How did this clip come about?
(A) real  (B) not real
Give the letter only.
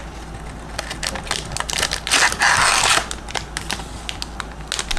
A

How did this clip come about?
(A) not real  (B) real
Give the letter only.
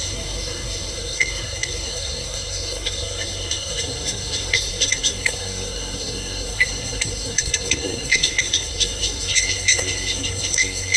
A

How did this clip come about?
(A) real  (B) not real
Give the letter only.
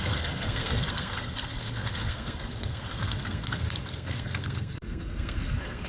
B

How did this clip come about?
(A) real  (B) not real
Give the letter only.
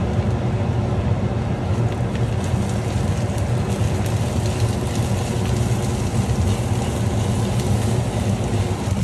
A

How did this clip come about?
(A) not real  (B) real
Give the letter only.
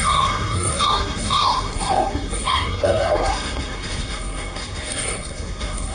A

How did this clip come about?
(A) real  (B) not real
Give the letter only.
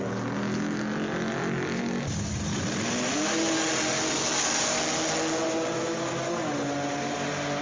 A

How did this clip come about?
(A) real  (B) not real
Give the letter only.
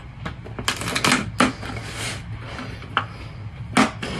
A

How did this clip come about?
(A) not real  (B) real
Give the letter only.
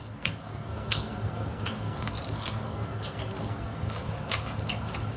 A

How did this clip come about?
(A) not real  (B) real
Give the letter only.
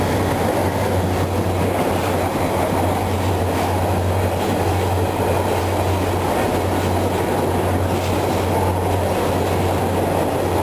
B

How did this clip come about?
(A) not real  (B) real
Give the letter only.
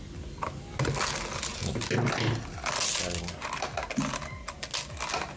B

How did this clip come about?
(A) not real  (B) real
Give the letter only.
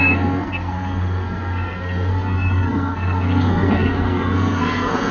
A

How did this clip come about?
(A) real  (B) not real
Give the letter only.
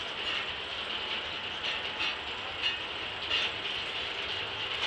A